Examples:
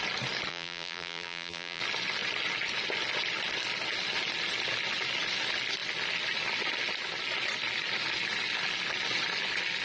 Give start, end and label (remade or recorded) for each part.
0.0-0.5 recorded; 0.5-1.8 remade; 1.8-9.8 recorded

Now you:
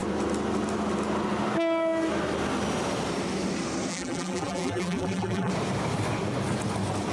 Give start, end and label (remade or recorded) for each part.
0.0-3.9 recorded; 3.9-5.5 remade; 5.5-7.1 recorded

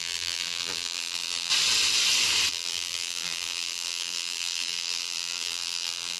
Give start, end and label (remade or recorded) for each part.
0.0-1.5 remade; 1.5-2.5 recorded; 2.5-6.2 remade

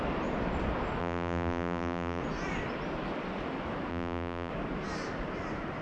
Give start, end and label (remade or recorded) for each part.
0.0-1.0 recorded; 1.0-2.2 remade; 2.2-3.9 recorded; 3.9-4.5 remade; 4.5-5.8 recorded

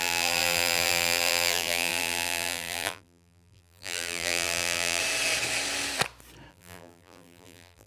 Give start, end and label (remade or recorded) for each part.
0.0-5.0 remade; 5.0-6.5 recorded; 6.5-7.9 remade

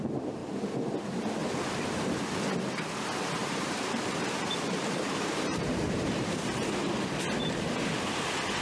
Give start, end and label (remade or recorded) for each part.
0.0-3.4 recorded; 3.4-6.9 remade; 6.9-8.6 recorded

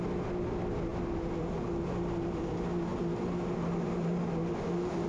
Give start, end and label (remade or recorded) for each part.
0.0-5.1 recorded

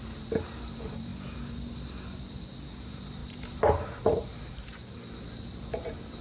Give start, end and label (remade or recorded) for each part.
0.0-1.1 remade; 1.1-2.8 recorded; 2.8-6.2 remade